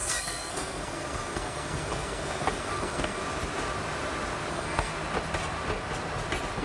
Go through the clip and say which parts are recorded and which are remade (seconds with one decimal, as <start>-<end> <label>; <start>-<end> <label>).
0.0-3.2 remade; 3.2-4.5 recorded; 4.5-4.9 remade; 4.9-6.6 recorded